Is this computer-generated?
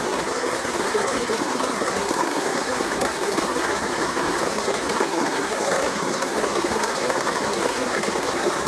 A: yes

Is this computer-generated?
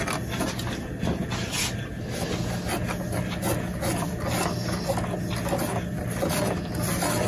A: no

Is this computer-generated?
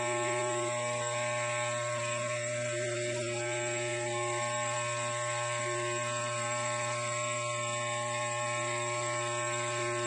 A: no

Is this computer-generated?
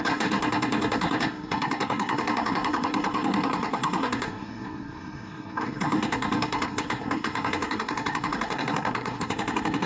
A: yes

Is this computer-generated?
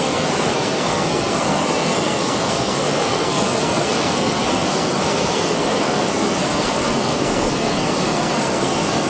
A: yes